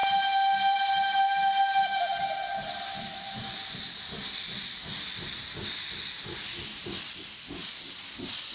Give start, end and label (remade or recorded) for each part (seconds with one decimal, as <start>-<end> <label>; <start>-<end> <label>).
0.0-4.9 remade; 4.9-8.5 recorded